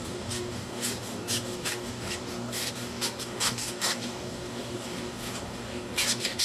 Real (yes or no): no